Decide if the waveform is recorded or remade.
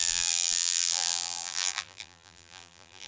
remade